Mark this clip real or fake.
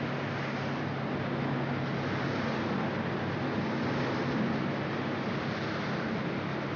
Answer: real